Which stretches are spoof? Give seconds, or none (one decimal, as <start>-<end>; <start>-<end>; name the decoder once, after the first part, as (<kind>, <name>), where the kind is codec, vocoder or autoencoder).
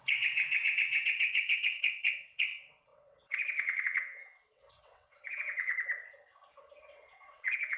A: 0.0-5.7 (vocoder, WaveNeXt); 6.8-7.8